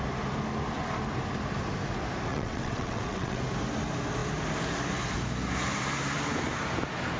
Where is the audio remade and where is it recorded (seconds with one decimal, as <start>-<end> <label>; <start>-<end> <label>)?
0.0-2.3 recorded; 2.3-3.4 remade; 3.4-7.2 recorded